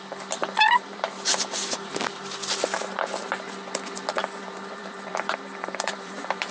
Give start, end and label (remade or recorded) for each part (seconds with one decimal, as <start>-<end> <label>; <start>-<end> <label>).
0.0-0.4 recorded; 0.4-1.9 remade; 1.9-4.2 recorded; 4.2-6.5 remade